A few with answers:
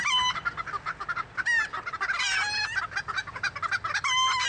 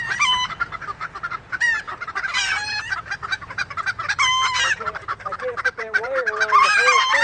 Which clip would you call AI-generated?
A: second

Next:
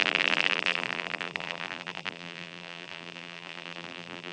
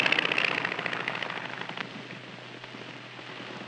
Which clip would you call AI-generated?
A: first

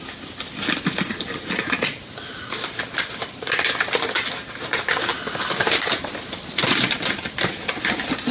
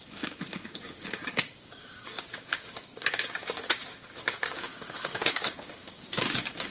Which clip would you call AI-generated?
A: second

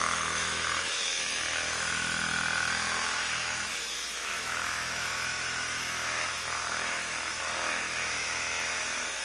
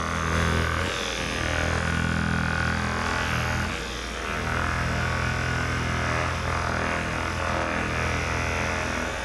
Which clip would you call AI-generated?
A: first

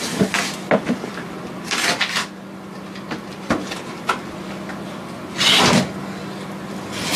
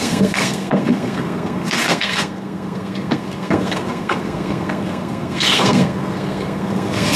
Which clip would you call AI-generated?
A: second